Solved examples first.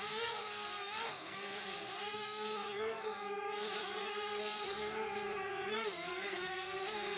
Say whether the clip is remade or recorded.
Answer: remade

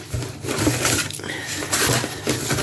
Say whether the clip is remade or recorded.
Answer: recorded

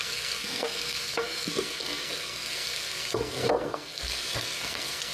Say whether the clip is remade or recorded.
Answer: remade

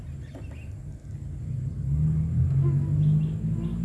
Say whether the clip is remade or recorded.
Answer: recorded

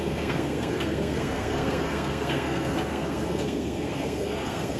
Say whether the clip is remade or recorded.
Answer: remade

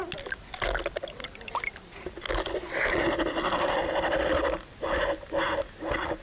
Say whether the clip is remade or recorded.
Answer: recorded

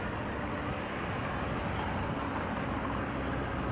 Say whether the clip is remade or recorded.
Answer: recorded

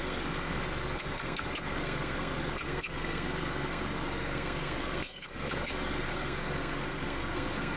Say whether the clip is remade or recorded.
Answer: remade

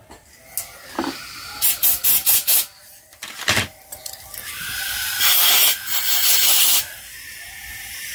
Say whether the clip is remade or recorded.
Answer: recorded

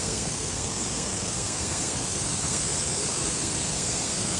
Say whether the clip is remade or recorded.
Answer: remade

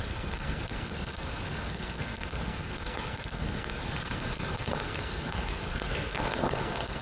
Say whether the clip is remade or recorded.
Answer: remade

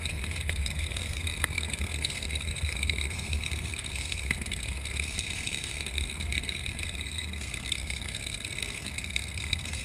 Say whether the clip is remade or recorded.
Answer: remade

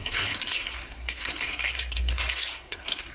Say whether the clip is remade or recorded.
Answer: remade